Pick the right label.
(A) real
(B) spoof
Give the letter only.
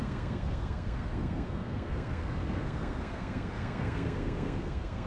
B